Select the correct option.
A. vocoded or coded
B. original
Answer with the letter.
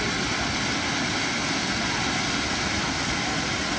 B